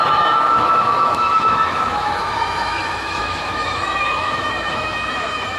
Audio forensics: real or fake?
fake